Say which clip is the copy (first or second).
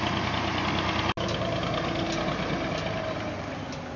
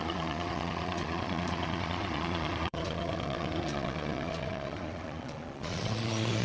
second